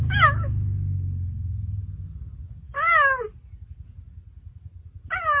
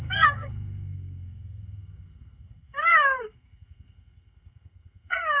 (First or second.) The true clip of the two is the first